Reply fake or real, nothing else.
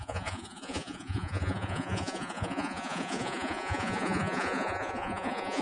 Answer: fake